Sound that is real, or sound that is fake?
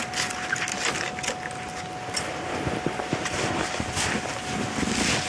real